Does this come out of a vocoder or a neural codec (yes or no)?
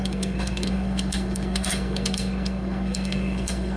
yes